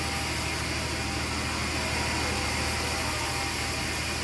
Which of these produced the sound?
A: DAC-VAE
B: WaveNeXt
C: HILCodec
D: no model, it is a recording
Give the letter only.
D